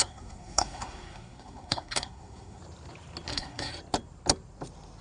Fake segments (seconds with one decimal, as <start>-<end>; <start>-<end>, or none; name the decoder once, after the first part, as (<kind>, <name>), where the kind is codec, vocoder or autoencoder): 0.0-2.6 (codec, SNAC); 3.3-3.7